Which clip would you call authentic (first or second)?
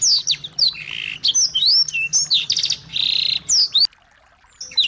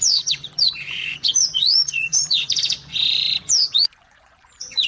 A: first